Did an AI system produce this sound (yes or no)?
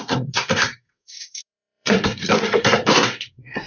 yes